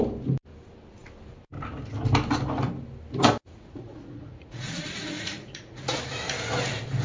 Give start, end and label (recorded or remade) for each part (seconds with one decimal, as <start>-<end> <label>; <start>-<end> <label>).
0.0-3.4 recorded; 3.4-6.0 remade; 6.0-7.0 recorded